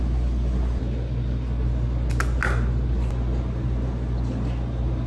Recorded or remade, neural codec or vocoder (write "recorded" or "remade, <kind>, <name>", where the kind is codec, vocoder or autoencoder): recorded